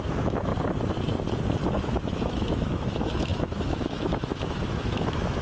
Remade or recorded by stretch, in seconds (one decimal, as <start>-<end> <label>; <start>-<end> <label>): 0.0-0.5 remade; 0.5-1.8 recorded; 1.8-5.4 remade